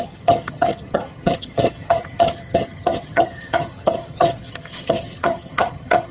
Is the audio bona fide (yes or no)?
no